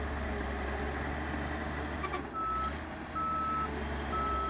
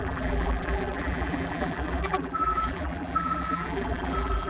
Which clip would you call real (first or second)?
first